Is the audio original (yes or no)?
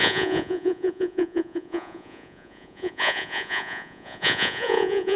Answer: no